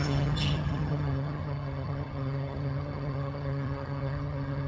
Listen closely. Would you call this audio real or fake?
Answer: fake